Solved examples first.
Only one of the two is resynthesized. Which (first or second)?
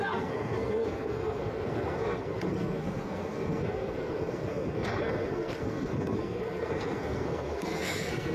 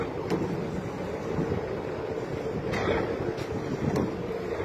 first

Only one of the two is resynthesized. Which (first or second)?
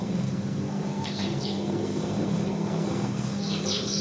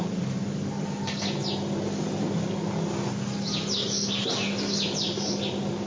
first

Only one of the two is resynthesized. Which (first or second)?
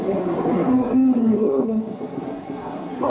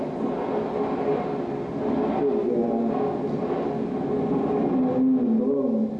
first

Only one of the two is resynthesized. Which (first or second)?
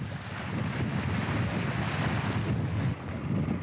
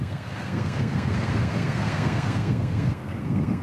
second